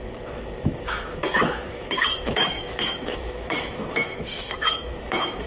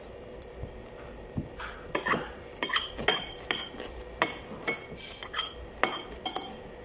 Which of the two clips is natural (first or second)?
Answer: second